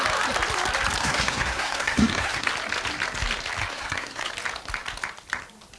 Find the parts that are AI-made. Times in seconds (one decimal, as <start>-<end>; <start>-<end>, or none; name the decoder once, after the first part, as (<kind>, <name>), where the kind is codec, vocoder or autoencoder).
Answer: 1.0-2.5 (codec, SNAC); 3.6-4.3